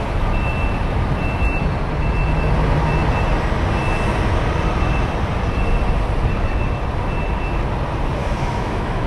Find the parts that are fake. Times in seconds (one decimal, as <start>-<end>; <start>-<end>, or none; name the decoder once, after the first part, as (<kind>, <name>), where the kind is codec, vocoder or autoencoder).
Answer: 8.2-9.1 (autoencoder, DAC-VAE)